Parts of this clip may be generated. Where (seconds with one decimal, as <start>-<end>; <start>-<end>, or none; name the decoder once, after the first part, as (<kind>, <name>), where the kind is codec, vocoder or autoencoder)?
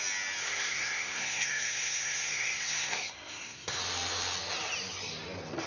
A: 0.4-3.8 (codec, SNAC)